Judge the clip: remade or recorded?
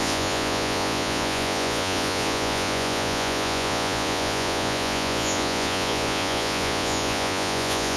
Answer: remade